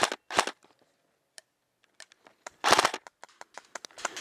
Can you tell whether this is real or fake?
real